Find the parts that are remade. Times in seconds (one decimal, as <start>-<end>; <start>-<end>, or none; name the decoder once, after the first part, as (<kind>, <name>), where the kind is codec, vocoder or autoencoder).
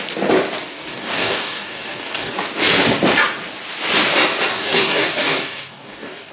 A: 0.6-2.3 (codec, DAC); 4.5-6.3